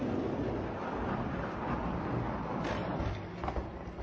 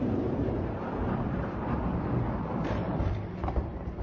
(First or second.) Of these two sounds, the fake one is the second